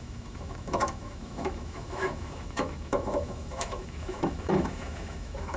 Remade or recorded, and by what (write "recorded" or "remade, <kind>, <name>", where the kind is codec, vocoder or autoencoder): remade, autoencoder, DAC-VAE